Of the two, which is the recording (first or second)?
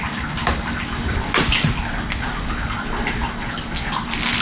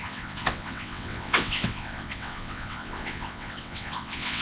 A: first